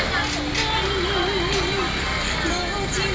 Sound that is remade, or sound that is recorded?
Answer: recorded